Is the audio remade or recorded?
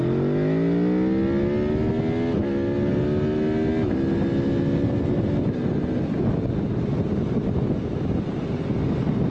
recorded